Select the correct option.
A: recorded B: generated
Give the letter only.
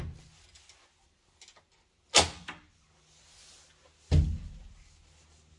A